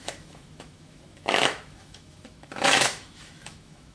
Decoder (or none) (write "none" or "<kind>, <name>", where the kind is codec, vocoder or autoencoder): autoencoder, DAC-VAE